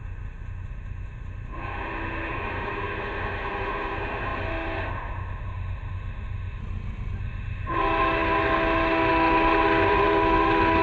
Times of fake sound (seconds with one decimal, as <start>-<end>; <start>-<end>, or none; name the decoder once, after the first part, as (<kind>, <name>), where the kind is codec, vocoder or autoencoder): 0.0-6.6 (autoencoder, DAC-VAE); 7.2-10.8